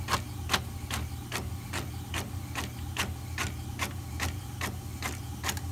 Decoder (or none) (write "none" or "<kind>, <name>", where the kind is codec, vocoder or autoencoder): none